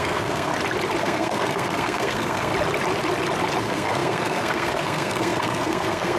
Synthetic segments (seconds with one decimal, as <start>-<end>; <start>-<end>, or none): 0.0-0.5; 1.0-2.5; 3.6-6.2